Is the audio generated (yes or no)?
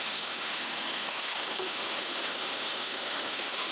yes